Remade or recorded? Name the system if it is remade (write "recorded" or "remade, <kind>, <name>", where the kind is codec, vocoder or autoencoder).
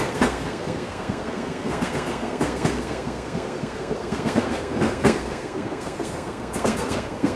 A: remade, codec, SNAC